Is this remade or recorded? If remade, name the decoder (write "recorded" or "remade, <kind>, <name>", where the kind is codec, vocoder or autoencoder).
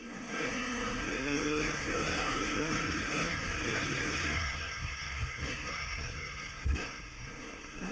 remade, codec, SNAC